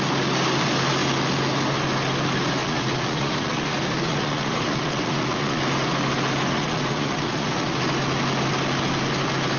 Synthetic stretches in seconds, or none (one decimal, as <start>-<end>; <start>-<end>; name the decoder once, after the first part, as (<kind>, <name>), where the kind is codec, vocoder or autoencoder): 2.6-5.6 (vocoder, Vocos); 6.6-7.8